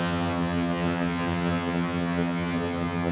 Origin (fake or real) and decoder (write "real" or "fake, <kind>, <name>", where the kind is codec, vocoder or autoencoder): fake, vocoder, HiFi-GAN